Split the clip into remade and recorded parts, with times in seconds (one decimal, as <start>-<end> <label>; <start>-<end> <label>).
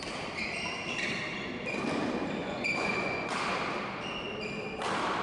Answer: 0.0-2.4 recorded; 2.4-3.3 remade; 3.3-5.2 recorded